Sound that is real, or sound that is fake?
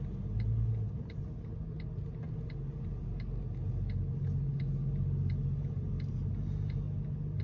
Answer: real